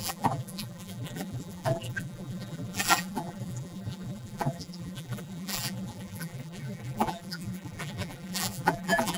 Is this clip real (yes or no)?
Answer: no